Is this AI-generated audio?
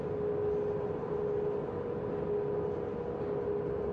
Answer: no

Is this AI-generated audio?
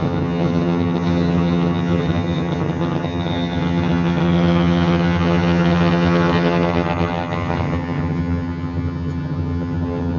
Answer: yes